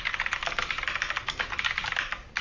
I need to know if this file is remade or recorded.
recorded